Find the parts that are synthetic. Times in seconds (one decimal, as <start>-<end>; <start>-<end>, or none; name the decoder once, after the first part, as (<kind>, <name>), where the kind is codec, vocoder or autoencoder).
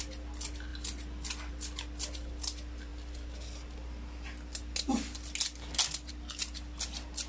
none